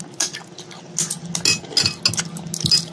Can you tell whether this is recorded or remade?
recorded